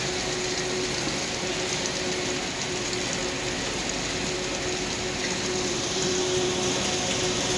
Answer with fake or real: real